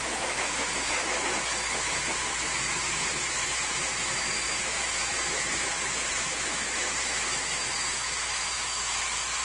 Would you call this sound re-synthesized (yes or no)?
yes